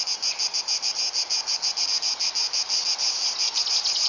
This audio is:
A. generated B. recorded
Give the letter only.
B